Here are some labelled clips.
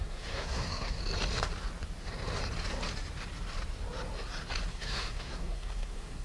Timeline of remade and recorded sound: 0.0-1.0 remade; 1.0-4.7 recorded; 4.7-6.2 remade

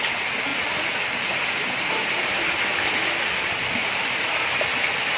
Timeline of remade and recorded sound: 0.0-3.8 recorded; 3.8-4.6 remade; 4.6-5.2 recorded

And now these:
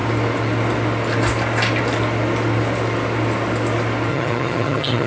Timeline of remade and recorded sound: 0.0-4.1 recorded; 4.1-5.1 remade

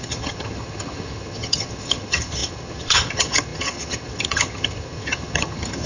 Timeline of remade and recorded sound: 0.0-5.9 remade